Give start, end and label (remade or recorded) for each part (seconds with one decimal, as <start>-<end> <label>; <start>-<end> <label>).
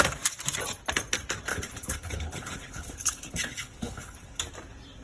0.0-1.5 recorded; 1.5-4.4 remade; 4.4-5.0 recorded